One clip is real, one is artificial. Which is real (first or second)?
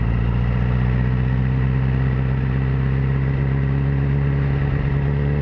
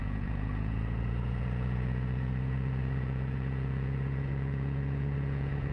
first